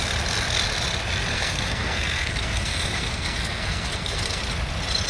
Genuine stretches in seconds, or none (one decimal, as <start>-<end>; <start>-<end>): 0.0-1.3; 4.4-5.1